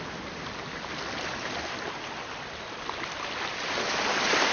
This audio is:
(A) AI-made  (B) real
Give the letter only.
B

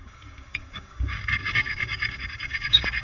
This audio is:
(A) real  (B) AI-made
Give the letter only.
B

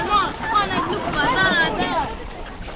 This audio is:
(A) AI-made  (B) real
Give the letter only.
B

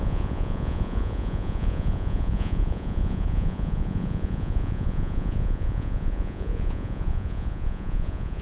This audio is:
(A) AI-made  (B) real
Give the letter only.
A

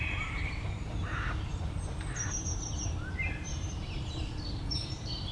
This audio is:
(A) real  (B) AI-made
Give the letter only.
B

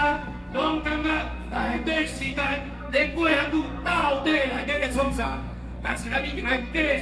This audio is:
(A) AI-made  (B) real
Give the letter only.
A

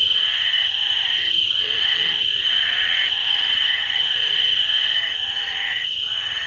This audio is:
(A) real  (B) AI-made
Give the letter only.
B